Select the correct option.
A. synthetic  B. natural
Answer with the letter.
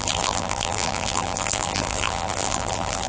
A